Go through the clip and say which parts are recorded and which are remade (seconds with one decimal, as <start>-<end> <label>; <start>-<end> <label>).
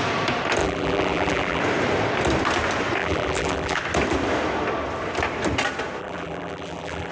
0.0-0.6 recorded; 0.6-1.6 remade; 1.6-3.0 recorded; 3.0-3.8 remade; 3.8-6.0 recorded; 6.0-7.1 remade